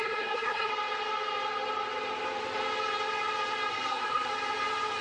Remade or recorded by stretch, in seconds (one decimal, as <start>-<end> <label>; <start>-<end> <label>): 0.0-0.7 remade; 0.7-3.7 recorded; 3.7-4.3 remade; 4.3-5.0 recorded